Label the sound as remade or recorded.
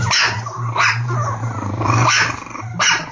recorded